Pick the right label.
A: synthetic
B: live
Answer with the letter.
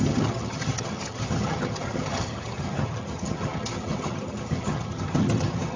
A